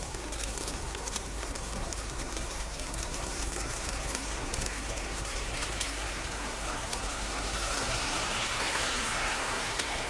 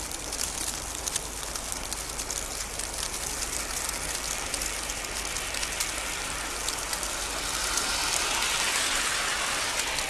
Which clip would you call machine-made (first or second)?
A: first